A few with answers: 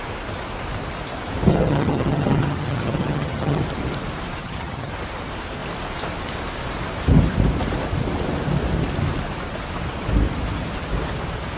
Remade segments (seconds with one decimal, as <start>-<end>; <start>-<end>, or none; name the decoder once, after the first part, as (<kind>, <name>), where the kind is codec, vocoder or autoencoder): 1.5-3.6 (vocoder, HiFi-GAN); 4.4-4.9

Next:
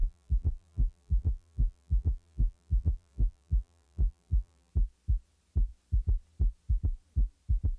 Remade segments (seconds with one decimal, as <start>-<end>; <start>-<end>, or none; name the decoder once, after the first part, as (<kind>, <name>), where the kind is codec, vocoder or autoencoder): 0.0-4.7 (vocoder, BigVGAN v2)

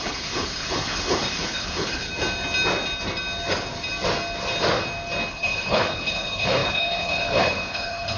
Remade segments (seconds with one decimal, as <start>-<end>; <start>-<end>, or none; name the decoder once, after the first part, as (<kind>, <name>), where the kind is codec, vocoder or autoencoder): 0.0-2.1 (codec, HILCodec); 5.3-8.2

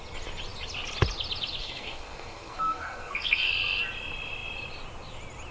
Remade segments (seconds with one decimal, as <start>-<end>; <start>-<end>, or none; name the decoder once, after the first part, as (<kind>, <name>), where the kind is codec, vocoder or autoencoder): 1.6-3.5 (codec, SNAC)

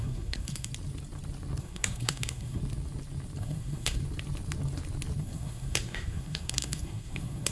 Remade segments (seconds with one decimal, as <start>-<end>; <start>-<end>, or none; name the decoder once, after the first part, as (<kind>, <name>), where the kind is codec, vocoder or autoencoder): 0.0-0.7 (codec, SNAC); 1.6-2.6; 3.4-4.0; 5.2-7.5

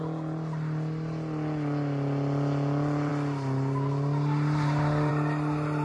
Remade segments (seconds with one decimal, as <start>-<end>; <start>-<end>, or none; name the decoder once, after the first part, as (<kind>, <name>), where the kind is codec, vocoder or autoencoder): none

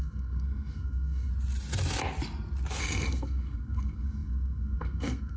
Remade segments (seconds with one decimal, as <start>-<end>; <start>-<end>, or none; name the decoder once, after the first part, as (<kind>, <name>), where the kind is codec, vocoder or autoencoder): 0.0-1.3 (codec, SNAC); 2.8-5.4

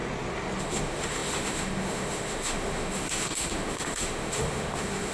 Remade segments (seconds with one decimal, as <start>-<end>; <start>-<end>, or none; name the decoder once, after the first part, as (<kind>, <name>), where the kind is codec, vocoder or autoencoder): 0.6-5.1 (autoencoder, DAC-VAE)